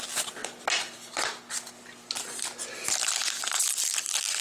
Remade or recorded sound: recorded